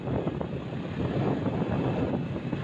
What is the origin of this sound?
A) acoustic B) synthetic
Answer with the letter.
A